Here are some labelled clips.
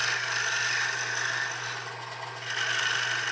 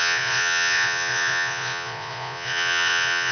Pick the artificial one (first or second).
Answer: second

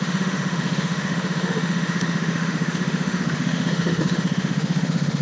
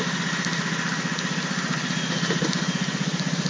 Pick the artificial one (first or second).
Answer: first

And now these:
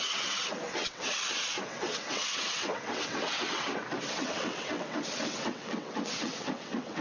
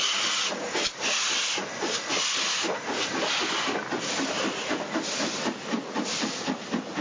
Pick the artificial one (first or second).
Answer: first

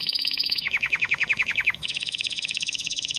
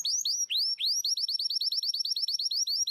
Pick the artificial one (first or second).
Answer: first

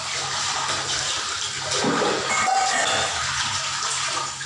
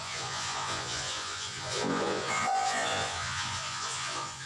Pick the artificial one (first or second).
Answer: second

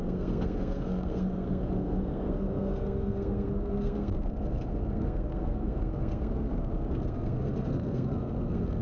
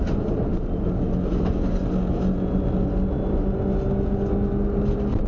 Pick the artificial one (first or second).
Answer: first